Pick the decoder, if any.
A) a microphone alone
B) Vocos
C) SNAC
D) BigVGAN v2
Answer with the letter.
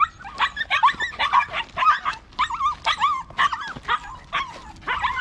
A